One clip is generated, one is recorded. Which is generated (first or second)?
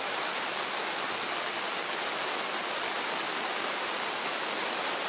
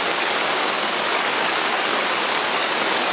second